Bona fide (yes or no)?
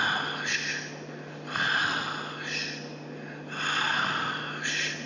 yes